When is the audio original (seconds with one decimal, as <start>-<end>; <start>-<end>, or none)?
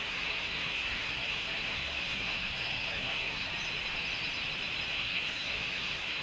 3.5-4.9